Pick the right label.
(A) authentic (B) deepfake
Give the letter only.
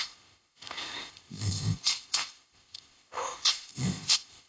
B